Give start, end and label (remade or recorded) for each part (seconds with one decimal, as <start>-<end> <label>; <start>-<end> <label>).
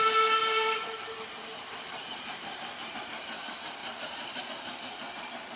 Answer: 0.0-0.4 recorded; 0.4-2.9 remade; 2.9-3.8 recorded; 3.8-4.5 remade; 4.5-5.6 recorded